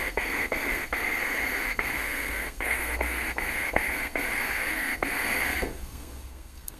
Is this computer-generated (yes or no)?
yes